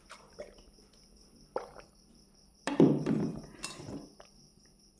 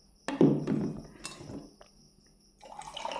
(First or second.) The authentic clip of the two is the second